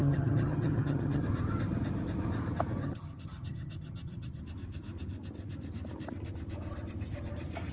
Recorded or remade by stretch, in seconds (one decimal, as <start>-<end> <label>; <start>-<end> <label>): 0.0-1.2 remade; 1.2-2.8 recorded; 2.8-4.4 remade; 4.4-7.7 recorded

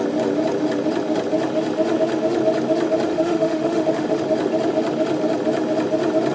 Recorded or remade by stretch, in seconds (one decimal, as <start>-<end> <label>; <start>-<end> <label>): 0.0-3.1 recorded; 3.1-4.2 remade; 4.2-6.3 recorded

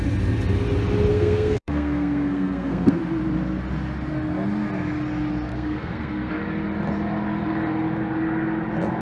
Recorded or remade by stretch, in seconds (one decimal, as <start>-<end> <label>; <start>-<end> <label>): 0.0-1.1 recorded; 1.1-3.0 remade; 3.0-5.5 recorded; 5.5-6.3 remade; 6.3-9.0 recorded

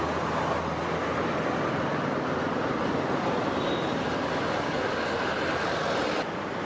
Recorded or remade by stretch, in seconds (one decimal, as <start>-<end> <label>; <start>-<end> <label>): 0.0-6.6 recorded

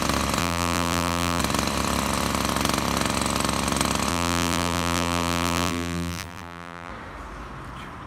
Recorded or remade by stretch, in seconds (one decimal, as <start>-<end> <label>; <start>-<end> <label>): 0.0-0.4 recorded; 0.4-1.4 remade; 1.4-4.1 recorded; 4.1-6.9 remade; 6.9-8.1 recorded